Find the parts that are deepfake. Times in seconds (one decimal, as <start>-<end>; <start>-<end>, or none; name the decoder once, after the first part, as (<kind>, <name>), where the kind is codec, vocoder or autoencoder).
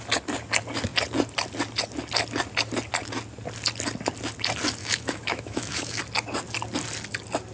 4.8-6.0 (autoencoder, DAC-VAE)